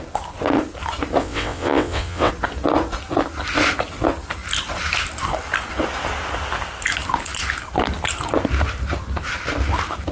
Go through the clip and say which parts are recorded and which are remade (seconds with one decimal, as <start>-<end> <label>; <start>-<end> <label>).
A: 0.0-1.2 recorded; 1.2-2.3 remade; 2.3-10.1 recorded